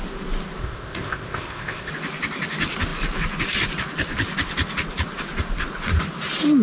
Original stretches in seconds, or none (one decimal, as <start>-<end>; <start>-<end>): 0.0-0.6; 1.9-6.6